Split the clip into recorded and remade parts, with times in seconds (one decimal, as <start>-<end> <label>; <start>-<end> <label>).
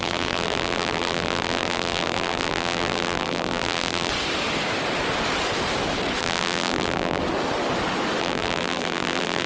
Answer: 0.0-4.1 remade; 4.1-6.2 recorded; 6.2-7.2 remade; 7.2-8.2 recorded; 8.2-9.5 remade